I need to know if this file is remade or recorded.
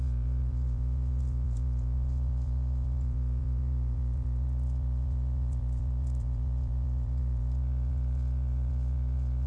remade